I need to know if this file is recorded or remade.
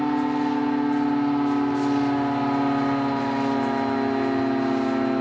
recorded